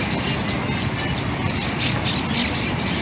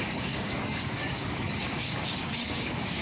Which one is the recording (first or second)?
first